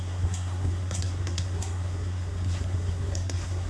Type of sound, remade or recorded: remade